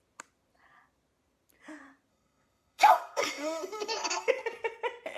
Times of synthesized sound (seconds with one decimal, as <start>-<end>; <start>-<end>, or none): 2.1-4.3